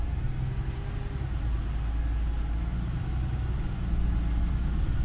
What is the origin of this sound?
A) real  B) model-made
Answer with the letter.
A